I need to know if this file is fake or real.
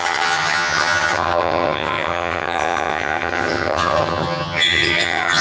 fake